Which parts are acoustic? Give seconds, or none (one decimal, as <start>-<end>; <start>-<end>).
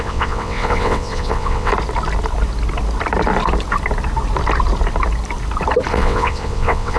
1.7-5.9